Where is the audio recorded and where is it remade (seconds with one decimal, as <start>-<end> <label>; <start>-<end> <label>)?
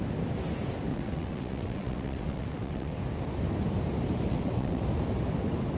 0.0-0.9 recorded; 0.9-3.0 remade; 3.0-4.3 recorded; 4.3-4.8 remade; 4.8-5.8 recorded